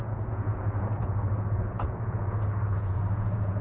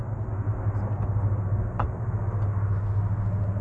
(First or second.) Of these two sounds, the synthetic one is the first